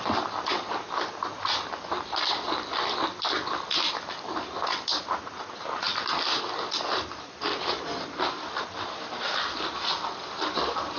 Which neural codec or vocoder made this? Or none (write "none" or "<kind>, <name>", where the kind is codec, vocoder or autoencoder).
none